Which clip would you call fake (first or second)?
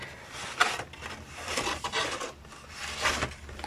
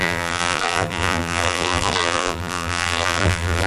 second